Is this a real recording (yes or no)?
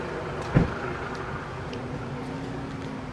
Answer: yes